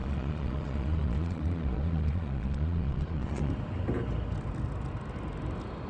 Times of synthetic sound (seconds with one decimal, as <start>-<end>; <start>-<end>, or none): 0.0-3.5